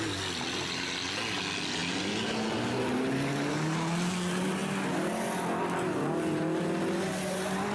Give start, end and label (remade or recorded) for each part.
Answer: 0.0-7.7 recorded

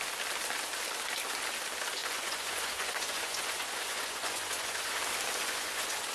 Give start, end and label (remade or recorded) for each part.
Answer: 0.0-2.0 recorded; 2.0-5.0 remade; 5.0-5.4 recorded; 5.4-6.1 remade

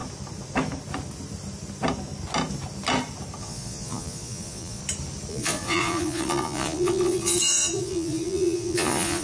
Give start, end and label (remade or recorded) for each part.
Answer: 0.0-3.4 recorded; 3.4-4.8 remade; 4.8-5.3 recorded; 5.3-9.2 remade

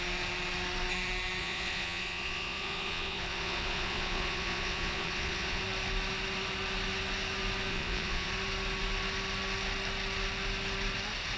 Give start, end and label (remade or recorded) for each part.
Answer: 0.0-1.4 recorded; 1.4-5.6 remade; 5.6-7.7 recorded; 7.7-8.3 remade; 8.3-11.4 recorded

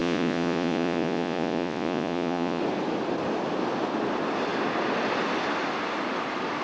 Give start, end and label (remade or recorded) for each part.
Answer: 0.0-2.6 remade; 2.6-6.6 recorded

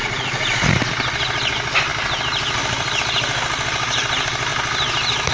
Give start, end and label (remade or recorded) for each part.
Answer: 0.0-0.9 remade; 0.9-5.3 recorded